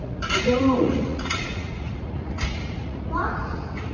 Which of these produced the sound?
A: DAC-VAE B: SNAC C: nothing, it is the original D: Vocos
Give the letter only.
D